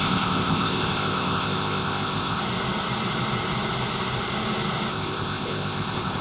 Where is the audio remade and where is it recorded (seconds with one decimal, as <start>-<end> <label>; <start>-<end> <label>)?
0.0-2.4 remade; 2.4-4.9 recorded; 4.9-6.2 remade